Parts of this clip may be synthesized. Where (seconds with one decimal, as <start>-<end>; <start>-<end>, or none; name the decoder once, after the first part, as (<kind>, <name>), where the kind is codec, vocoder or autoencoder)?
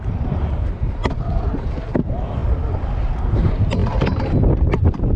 0.0-1.0 (vocoder, BigVGAN v2); 1.6-2.4; 3.0-5.2